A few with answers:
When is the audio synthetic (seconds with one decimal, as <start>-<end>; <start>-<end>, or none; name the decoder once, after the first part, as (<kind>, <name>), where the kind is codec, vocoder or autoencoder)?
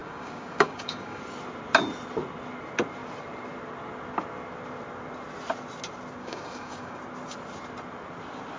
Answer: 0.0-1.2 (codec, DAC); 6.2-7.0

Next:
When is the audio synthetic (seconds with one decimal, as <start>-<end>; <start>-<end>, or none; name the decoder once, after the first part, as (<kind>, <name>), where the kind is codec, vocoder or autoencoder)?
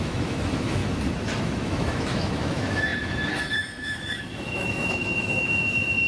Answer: 0.0-0.8 (autoencoder, DAC-VAE); 1.4-6.1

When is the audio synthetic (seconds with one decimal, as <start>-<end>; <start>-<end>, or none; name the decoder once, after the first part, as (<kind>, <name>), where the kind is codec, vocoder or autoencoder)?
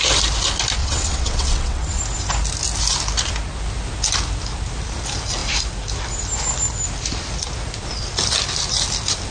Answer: 0.8-2.0 (vocoder, WaveNeXt)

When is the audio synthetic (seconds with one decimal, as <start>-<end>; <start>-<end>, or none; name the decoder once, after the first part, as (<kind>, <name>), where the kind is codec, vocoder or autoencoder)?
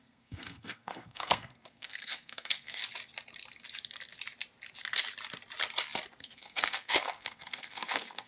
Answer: 0.0-2.8 (codec, SNAC); 6.2-8.3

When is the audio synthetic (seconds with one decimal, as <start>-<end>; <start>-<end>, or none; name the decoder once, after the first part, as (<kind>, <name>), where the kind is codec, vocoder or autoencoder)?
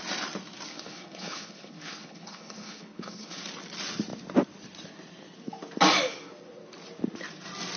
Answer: 0.7-3.4 (codec, HILCodec)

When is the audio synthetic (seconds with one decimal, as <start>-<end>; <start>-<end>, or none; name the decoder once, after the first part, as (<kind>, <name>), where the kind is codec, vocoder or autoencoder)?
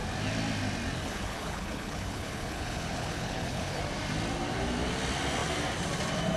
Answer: 1.0-3.8 (codec, HILCodec)